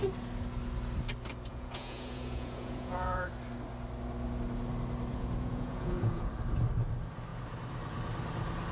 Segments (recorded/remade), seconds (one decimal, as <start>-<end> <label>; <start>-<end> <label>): 0.0-1.5 recorded; 1.5-3.3 remade; 3.3-5.1 recorded; 5.1-6.3 remade; 6.3-8.7 recorded